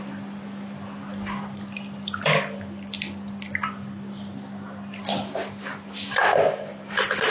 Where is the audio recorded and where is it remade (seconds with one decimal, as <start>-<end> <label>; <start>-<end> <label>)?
0.0-7.3 recorded